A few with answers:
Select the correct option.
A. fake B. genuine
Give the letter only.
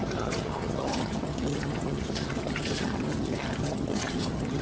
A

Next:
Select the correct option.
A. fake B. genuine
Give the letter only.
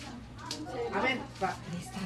A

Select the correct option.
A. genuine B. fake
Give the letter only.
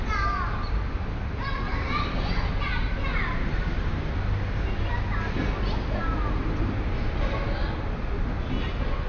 A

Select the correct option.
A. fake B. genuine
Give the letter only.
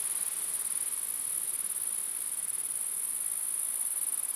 B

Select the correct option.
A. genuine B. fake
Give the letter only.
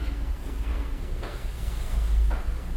B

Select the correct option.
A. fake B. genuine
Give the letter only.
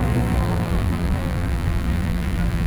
A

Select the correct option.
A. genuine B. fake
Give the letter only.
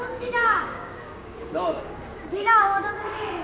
B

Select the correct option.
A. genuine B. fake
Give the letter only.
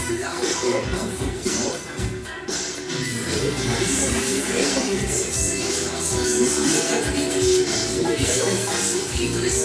B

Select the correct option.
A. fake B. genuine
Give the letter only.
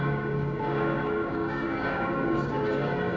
A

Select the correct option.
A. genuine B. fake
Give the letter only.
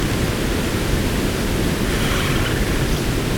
A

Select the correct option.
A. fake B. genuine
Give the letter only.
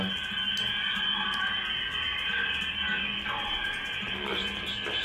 B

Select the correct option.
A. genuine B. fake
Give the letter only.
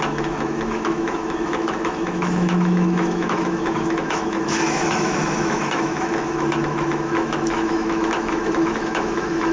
B